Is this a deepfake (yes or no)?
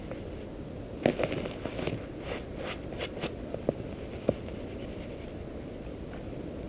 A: no